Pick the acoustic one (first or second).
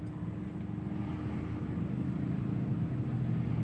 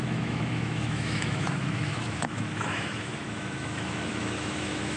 first